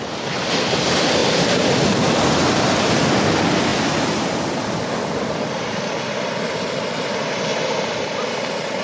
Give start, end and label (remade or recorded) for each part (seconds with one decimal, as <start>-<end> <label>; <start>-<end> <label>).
0.0-8.8 recorded